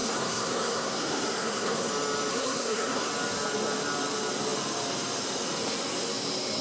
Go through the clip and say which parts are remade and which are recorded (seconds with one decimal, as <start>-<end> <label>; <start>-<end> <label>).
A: 0.0-1.9 remade; 1.9-2.3 recorded; 2.3-3.1 remade; 3.1-6.6 recorded